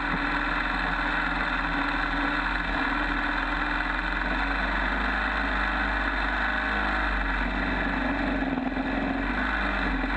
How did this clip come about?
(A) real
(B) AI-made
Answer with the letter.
A